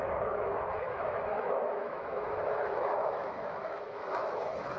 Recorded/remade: remade